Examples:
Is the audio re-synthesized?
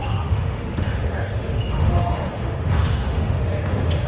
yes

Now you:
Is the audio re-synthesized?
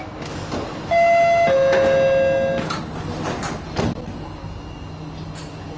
no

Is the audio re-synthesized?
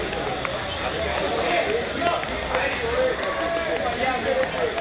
no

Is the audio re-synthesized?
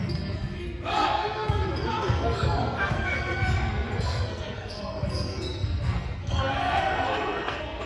yes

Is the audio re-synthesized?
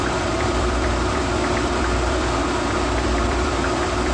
yes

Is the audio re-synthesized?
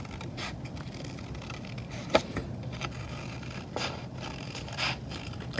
no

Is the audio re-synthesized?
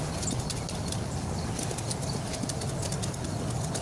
no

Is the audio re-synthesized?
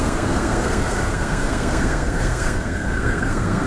yes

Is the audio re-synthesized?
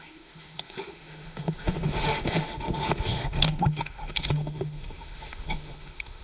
yes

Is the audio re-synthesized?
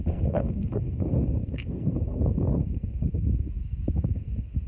yes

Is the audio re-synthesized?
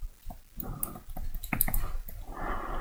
no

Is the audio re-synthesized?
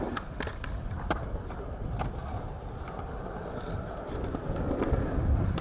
no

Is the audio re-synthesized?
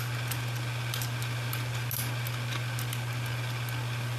no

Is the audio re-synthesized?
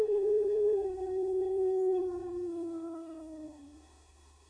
yes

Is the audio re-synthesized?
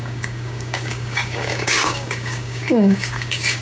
yes